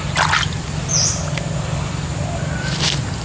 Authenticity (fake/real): real